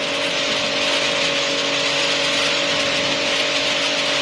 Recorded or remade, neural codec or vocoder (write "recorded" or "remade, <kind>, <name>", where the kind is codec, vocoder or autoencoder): recorded